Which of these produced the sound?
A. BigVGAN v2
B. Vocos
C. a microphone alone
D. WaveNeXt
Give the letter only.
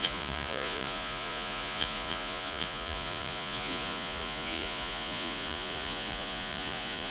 B